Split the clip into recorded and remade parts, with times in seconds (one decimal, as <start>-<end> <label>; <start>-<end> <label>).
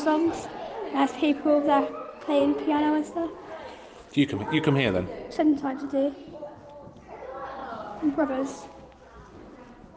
0.0-7.6 recorded; 7.6-8.3 remade; 8.3-10.0 recorded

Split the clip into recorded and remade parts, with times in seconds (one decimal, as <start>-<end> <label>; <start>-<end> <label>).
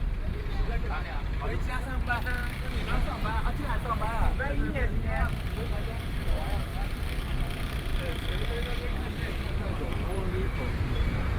0.0-2.4 remade; 2.4-2.9 recorded; 2.9-6.7 remade; 6.7-7.5 recorded; 7.5-7.9 remade; 7.9-8.5 recorded; 8.5-11.4 remade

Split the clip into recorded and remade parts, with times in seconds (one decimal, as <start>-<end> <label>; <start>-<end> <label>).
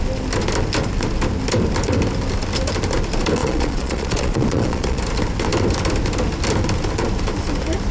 0.0-3.4 recorded; 3.4-5.0 remade; 5.0-7.9 recorded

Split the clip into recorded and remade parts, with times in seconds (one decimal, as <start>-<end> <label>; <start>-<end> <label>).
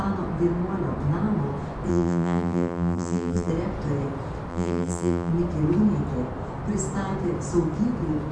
0.0-1.9 recorded; 1.9-3.5 remade; 3.5-4.5 recorded; 4.5-5.3 remade; 5.3-8.3 recorded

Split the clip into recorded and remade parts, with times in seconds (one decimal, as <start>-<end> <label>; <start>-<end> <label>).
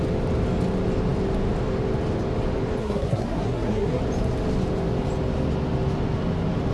0.0-2.8 recorded; 2.8-4.0 remade; 4.0-6.7 recorded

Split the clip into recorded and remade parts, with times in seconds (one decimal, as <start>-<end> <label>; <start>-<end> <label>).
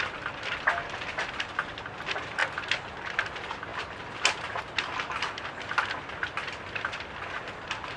0.0-8.0 recorded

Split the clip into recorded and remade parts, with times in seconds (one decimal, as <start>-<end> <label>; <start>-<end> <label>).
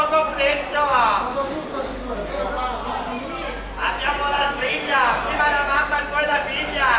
0.0-7.0 recorded